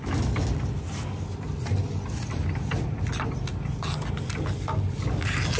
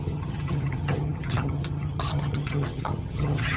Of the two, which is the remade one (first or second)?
second